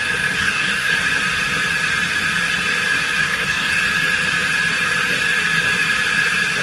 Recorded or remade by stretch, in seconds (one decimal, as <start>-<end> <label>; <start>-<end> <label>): 0.0-0.4 recorded; 0.4-0.9 remade; 0.9-3.2 recorded; 3.2-3.8 remade; 3.8-6.6 recorded